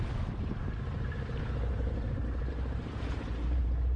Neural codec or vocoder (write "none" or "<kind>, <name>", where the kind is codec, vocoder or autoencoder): vocoder, BigVGAN v2